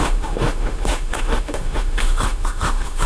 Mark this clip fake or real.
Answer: fake